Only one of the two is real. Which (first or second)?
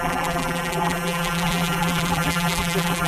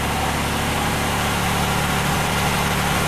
second